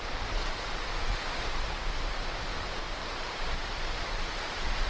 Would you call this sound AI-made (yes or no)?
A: yes